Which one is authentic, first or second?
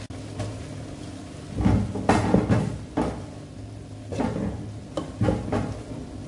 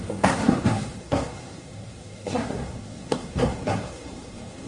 first